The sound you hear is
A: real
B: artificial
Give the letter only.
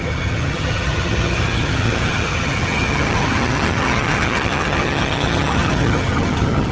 B